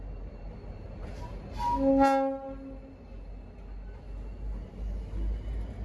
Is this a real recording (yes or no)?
yes